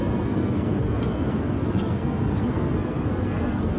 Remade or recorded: remade